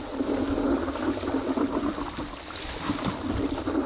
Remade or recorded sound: recorded